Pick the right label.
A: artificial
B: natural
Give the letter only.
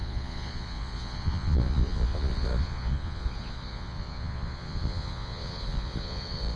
A